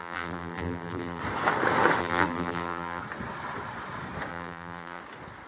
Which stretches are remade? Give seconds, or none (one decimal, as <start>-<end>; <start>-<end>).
0.0-1.2; 2.0-3.0; 4.3-5.0